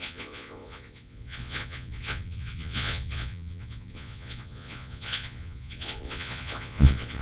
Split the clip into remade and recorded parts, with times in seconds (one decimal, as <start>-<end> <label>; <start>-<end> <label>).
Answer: 0.0-7.2 remade